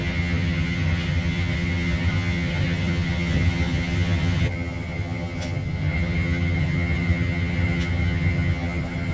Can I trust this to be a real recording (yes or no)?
no